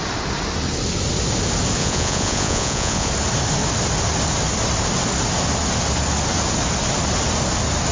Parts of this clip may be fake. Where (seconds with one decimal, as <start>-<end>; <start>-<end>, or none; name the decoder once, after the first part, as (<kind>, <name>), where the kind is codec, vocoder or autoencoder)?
1.8-3.1 (vocoder, Vocos)